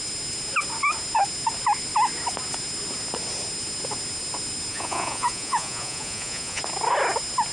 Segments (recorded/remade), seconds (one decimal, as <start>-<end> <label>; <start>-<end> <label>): 0.0-4.7 recorded; 4.7-6.6 remade; 6.6-7.5 recorded